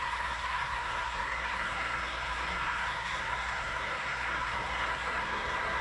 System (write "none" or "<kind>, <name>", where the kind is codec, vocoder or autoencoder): codec, SNAC